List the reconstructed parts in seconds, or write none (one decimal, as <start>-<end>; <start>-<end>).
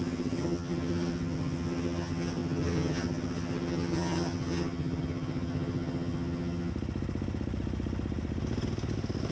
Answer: 0.0-6.7